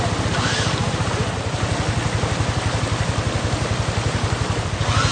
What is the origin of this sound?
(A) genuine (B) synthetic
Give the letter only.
A